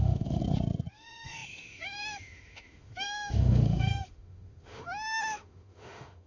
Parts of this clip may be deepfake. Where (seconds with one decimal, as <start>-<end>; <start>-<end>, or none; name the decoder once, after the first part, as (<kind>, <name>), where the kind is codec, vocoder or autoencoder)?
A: 0.0-0.4 (autoencoder, DAC-VAE); 0.9-6.3